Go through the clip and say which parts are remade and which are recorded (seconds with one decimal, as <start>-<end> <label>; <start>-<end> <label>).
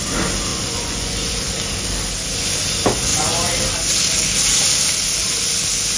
0.0-0.5 recorded; 0.5-1.4 remade; 1.4-6.0 recorded